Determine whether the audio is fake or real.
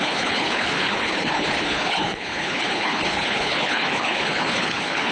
fake